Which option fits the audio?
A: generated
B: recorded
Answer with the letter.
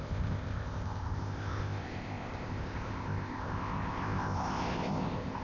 A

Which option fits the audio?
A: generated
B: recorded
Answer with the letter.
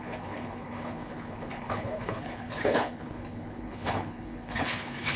A